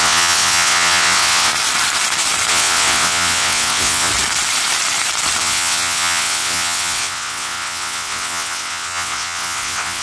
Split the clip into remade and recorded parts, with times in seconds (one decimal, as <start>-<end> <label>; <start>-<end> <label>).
0.0-1.5 remade; 1.5-2.5 recorded; 2.5-4.1 remade; 4.1-5.4 recorded; 5.4-10.0 remade